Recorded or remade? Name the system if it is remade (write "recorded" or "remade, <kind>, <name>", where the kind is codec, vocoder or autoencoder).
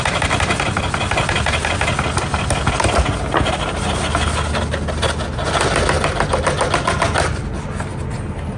recorded